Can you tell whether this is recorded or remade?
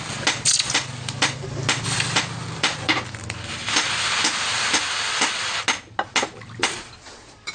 recorded